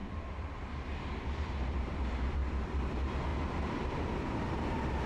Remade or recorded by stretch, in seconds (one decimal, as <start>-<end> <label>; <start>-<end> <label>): 0.0-1.2 remade; 1.2-2.4 recorded; 2.4-2.9 remade; 2.9-3.3 recorded; 3.3-4.1 remade; 4.1-5.1 recorded